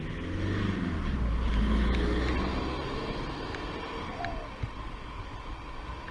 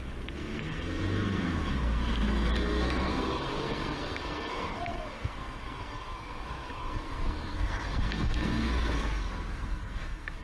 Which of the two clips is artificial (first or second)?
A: second